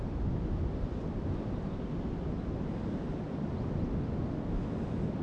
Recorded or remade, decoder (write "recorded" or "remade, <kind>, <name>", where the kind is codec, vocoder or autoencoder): recorded